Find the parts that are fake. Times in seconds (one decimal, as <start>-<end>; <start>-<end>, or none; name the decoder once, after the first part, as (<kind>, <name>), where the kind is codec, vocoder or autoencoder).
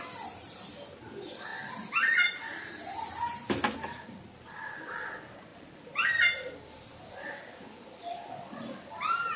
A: none